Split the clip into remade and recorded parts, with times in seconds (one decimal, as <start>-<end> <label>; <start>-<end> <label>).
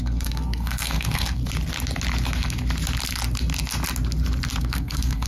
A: 0.0-1.4 remade; 1.4-4.6 recorded; 4.6-5.3 remade